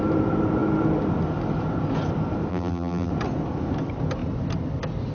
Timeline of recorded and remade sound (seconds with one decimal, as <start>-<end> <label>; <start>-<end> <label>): 0.0-2.5 recorded; 2.5-3.1 remade; 3.1-5.1 recorded